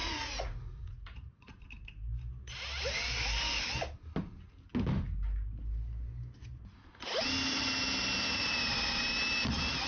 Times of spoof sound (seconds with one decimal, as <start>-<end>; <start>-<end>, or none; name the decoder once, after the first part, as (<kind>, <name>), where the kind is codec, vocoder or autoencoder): 0.0-1.6 (vocoder, Vocos)